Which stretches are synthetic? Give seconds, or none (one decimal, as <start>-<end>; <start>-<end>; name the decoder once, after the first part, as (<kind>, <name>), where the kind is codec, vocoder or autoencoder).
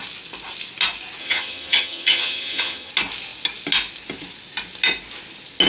1.2-2.9 (vocoder, HiFi-GAN)